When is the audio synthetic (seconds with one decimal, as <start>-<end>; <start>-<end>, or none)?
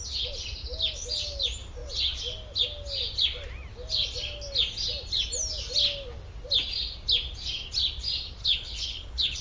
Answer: 8.4-9.4